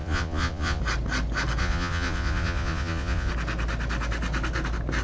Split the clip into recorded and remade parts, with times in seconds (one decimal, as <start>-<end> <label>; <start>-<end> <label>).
0.0-0.8 remade; 0.8-1.6 recorded; 1.6-3.3 remade; 3.3-5.0 recorded